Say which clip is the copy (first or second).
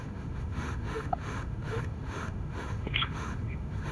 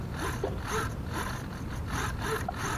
first